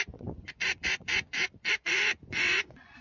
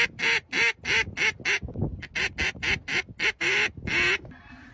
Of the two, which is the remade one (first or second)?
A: first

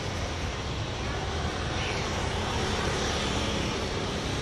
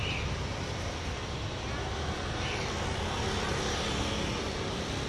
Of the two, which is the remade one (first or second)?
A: first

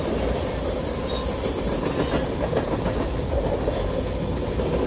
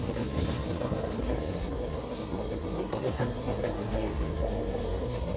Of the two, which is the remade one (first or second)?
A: second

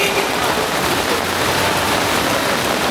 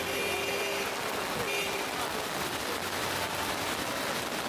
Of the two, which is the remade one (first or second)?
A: first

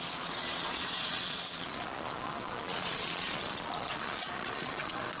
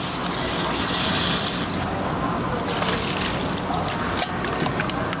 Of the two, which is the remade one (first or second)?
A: first